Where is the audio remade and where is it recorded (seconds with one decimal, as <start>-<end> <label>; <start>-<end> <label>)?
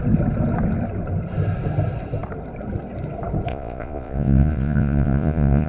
0.0-3.5 recorded; 3.5-5.7 remade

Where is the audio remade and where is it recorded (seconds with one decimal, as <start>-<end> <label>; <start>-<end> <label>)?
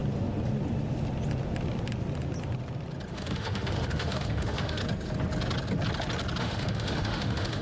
0.0-3.1 recorded; 3.1-4.8 remade; 4.8-6.4 recorded; 6.4-7.6 remade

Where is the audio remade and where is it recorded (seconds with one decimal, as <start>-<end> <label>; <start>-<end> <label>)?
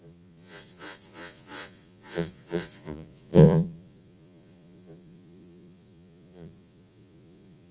0.0-7.7 remade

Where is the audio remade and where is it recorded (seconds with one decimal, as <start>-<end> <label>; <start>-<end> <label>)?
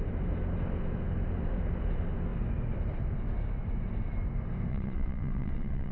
0.0-4.7 recorded; 4.7-5.9 remade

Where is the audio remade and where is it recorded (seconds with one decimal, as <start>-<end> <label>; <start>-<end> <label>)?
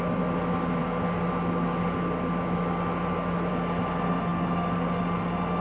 0.0-5.6 recorded